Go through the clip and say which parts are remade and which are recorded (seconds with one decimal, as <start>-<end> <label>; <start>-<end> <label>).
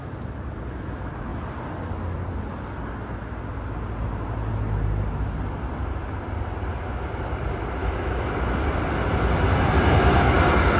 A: 0.0-7.8 recorded; 7.8-8.3 remade; 8.3-10.8 recorded